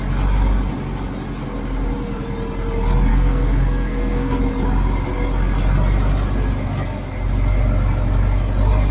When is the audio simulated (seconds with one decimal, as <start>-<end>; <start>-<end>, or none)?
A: 3.1-4.4